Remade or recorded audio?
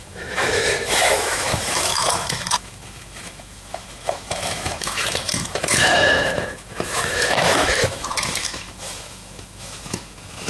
remade